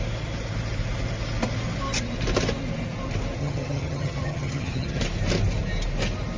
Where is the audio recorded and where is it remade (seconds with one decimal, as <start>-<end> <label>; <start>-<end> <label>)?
0.0-3.4 recorded; 3.4-5.0 remade; 5.0-6.4 recorded